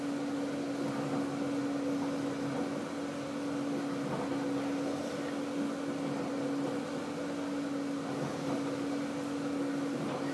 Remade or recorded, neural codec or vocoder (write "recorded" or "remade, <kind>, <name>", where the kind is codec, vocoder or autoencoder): recorded